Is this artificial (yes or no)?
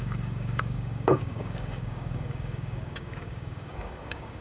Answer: yes